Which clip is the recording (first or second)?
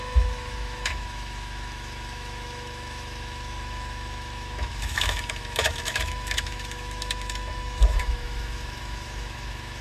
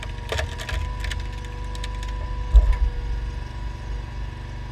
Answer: second